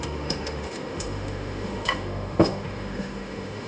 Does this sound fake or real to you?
fake